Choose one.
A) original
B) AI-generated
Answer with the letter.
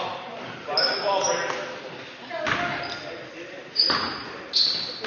A